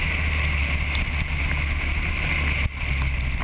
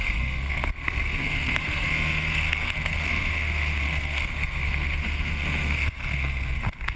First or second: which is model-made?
second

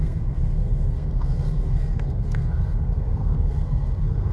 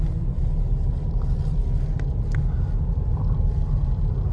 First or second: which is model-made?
first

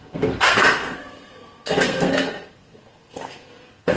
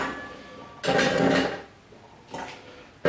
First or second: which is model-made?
first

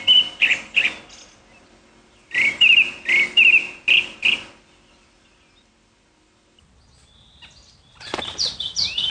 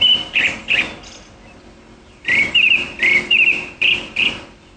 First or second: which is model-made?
second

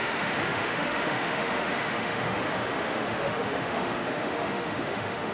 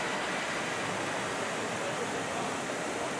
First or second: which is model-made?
first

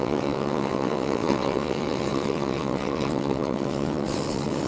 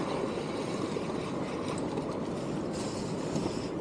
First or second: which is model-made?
first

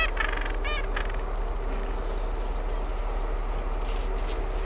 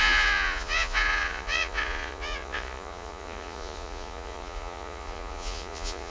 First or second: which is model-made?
second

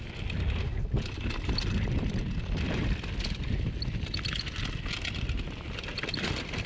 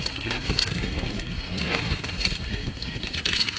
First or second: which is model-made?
second